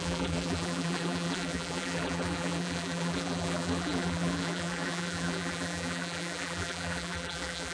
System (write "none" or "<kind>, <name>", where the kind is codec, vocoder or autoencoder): vocoder, BigVGAN v2